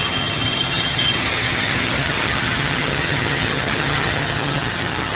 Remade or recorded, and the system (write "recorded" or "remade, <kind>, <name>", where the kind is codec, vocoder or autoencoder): remade, vocoder, HiFi-GAN